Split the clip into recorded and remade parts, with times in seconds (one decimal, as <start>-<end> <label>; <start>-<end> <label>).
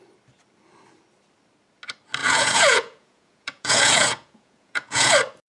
0.0-2.2 recorded; 2.2-5.1 remade; 5.1-5.5 recorded